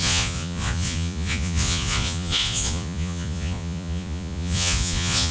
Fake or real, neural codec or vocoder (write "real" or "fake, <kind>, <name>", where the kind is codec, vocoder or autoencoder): fake, vocoder, Vocos